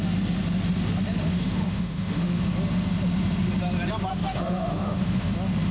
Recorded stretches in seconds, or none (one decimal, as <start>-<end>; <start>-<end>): 0.0-1.2; 2.4-4.1; 5.3-5.7

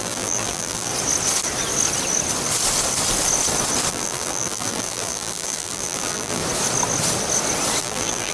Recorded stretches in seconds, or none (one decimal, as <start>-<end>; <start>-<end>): 0.9-3.9; 6.4-7.8

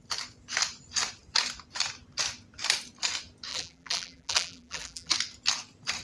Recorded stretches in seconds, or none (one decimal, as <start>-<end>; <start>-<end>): 0.0-3.5; 5.1-6.0

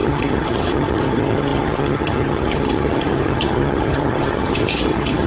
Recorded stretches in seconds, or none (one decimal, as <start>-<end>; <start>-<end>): none